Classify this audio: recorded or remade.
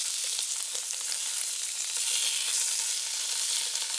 recorded